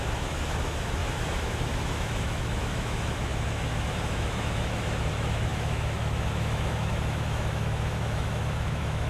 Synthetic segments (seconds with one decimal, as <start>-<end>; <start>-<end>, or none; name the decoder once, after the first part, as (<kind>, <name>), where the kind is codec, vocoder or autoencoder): 0.0-9.1 (autoencoder, DAC-VAE)